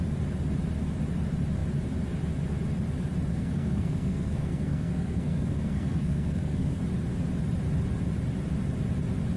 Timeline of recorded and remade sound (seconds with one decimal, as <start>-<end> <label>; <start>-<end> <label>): 0.0-3.3 recorded; 3.3-6.8 remade; 6.8-9.4 recorded